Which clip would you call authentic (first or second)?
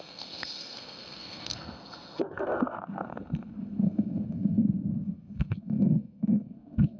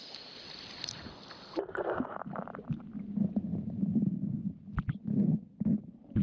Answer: second